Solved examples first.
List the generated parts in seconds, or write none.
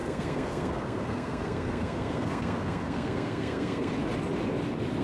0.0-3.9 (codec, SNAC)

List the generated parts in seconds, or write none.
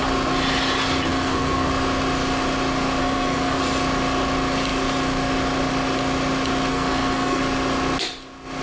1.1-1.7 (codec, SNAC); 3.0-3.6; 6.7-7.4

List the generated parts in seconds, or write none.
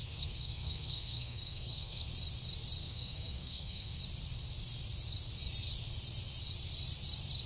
0.0-2.1 (codec, SNAC); 2.8-4.0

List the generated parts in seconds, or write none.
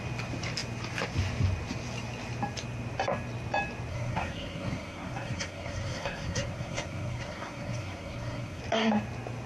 3.9-8.6 (codec, SNAC)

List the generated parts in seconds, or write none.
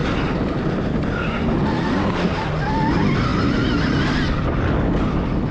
none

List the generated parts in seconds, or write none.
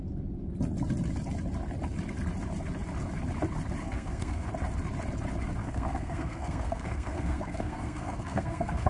3.8-4.5 (codec, SNAC); 5.6-8.9